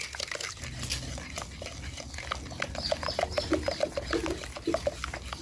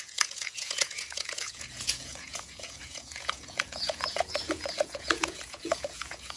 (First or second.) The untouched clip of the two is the first